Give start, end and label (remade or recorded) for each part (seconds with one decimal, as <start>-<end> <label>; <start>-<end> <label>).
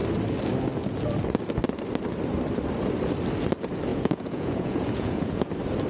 0.0-3.9 recorded; 3.9-5.5 remade; 5.5-5.9 recorded